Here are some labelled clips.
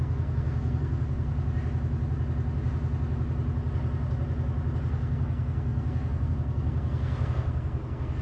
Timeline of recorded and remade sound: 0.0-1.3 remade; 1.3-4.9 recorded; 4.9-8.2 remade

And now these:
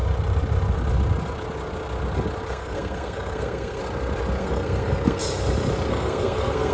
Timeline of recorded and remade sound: 0.0-2.5 recorded; 2.5-3.8 remade; 3.8-4.4 recorded; 4.4-5.2 remade; 5.2-5.9 recorded; 5.9-6.7 remade

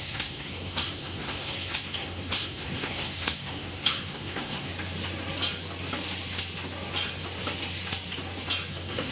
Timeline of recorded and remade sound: 0.0-4.7 remade; 4.7-8.7 recorded; 8.7-9.1 remade

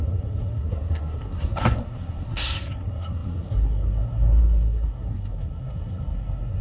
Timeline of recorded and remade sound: 0.0-6.6 remade

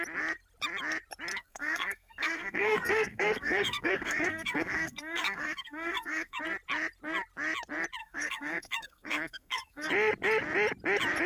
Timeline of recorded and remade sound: 0.0-1.3 recorded; 1.3-6.4 remade; 6.4-8.0 recorded; 8.0-9.9 remade; 9.9-11.3 recorded